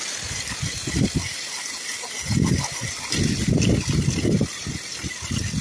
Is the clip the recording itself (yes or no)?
yes